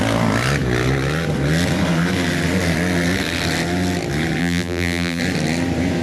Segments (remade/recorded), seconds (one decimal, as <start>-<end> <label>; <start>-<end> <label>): 0.0-4.4 recorded; 4.4-5.2 remade; 5.2-6.0 recorded

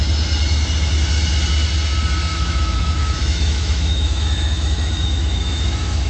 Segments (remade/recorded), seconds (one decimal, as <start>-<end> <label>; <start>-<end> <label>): 0.0-2.3 recorded; 2.3-6.1 remade

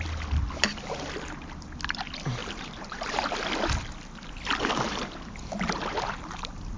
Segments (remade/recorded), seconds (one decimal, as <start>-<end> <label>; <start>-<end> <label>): 0.0-2.4 recorded; 2.4-3.2 remade; 3.2-6.8 recorded

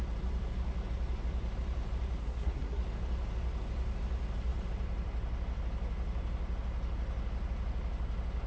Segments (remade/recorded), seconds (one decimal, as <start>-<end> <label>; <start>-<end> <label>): 0.0-2.2 recorded; 2.2-2.8 remade; 2.8-8.5 recorded

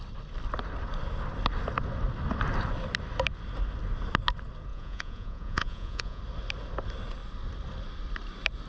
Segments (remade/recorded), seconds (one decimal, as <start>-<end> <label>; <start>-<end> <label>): 0.0-4.7 recorded; 4.7-6.2 remade; 6.2-8.7 recorded

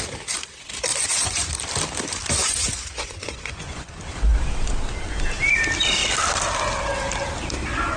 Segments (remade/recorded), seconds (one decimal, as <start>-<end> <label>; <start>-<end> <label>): 0.0-0.9 recorded; 0.9-1.5 remade; 1.5-2.4 recorded; 2.4-3.9 remade; 3.9-8.0 recorded

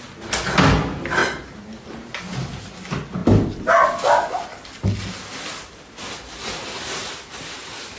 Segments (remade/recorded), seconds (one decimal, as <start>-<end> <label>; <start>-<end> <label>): 0.0-8.0 recorded

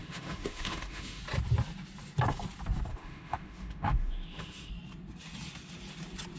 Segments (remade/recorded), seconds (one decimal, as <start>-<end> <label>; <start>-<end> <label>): 0.0-1.2 remade; 1.2-2.9 recorded; 2.9-4.7 remade; 4.7-6.4 recorded